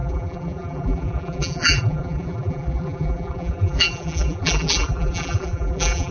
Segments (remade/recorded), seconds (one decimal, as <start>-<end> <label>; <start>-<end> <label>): 0.0-6.1 remade